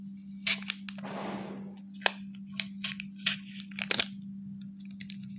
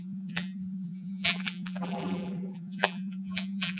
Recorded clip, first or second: first